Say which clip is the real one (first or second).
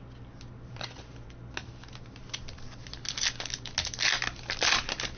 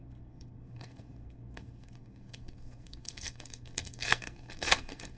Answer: first